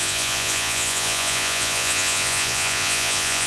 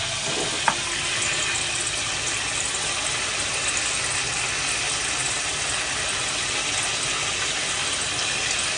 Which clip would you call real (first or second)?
second